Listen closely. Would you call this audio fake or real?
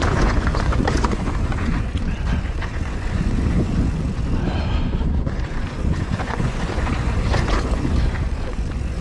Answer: fake